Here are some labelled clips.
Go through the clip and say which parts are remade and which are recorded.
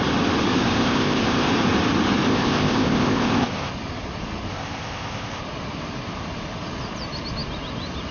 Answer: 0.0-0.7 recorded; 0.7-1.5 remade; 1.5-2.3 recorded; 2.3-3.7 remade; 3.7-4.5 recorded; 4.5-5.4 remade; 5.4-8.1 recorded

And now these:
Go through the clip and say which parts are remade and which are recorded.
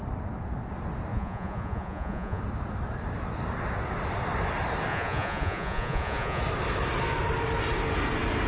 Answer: 0.0-1.1 recorded; 1.1-2.4 remade; 2.4-4.9 recorded; 4.9-6.4 remade; 6.4-8.5 recorded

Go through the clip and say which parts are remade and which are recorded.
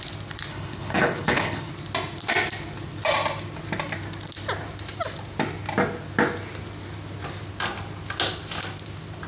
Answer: 0.0-0.5 recorded; 0.5-1.7 remade; 1.7-9.3 recorded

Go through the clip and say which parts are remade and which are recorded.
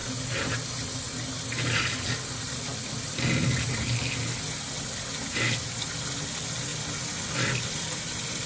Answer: 0.0-8.5 recorded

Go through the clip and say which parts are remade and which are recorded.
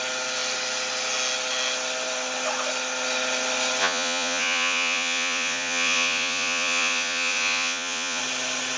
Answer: 0.0-3.8 recorded; 3.8-8.2 remade; 8.2-8.8 recorded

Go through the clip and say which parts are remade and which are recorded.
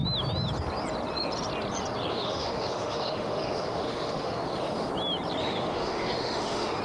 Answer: 0.0-2.1 recorded; 2.1-4.9 remade; 4.9-5.4 recorded; 5.4-6.8 remade